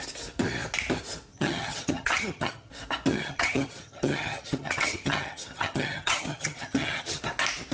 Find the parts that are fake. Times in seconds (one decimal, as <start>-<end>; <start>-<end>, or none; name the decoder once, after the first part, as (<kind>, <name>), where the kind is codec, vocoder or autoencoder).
1.3-2.7 (vocoder, HiFi-GAN); 3.1-7.2